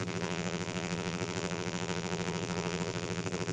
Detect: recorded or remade remade